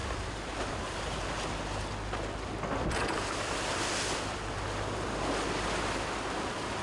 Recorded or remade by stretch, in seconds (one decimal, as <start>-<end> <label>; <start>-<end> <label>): 0.0-2.9 recorded; 2.9-6.8 remade